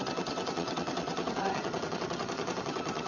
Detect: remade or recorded remade